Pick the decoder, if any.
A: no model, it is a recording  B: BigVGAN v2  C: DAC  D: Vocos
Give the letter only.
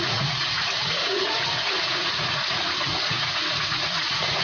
D